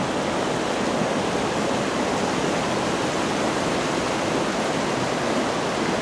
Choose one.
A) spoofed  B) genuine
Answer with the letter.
B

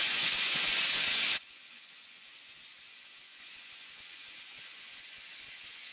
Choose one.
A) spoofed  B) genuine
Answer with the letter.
A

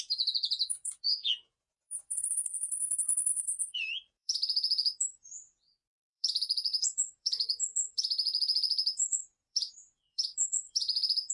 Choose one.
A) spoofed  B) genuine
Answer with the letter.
A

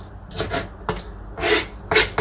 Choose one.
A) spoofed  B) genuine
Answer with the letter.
B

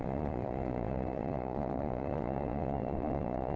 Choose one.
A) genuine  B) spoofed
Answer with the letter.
B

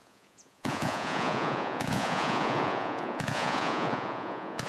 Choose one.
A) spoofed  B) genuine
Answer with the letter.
A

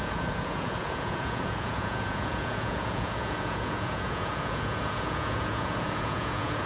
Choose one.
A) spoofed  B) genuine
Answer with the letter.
A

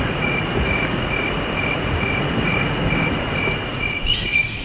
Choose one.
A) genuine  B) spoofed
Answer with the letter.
B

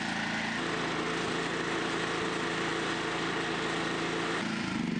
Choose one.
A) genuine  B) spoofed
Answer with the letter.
A